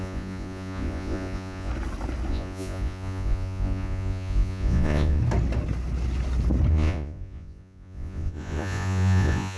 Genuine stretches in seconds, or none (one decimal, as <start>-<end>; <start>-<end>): 1.7-2.3; 5.2-6.7